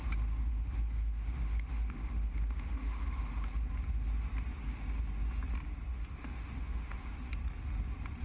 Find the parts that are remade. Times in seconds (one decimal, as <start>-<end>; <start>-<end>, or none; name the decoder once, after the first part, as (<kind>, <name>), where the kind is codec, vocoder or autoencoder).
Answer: 0.5-3.2 (autoencoder, DAC-VAE); 5.9-7.3

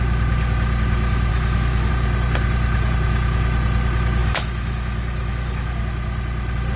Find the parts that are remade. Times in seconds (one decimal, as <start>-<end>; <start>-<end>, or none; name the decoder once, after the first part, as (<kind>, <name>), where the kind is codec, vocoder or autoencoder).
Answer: 1.3-1.9 (autoencoder, DAC-VAE); 4.2-5.8

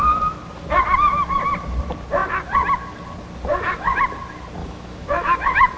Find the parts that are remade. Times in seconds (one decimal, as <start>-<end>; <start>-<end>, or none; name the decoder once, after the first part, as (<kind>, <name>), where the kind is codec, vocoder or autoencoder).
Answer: 3.5-4.0 (autoencoder, DAC-VAE); 4.6-5.8

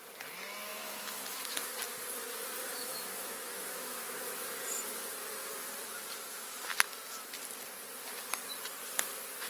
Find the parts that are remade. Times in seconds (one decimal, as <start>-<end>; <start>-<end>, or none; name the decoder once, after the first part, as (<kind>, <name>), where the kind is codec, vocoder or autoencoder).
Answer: 0.7-1.7 (autoencoder, DAC-VAE); 2.8-4.2

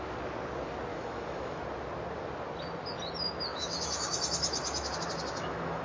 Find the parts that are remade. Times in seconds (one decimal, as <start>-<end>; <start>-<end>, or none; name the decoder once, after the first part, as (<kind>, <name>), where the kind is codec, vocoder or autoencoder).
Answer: 0.9-1.6 (autoencoder, DAC-VAE); 3.5-5.8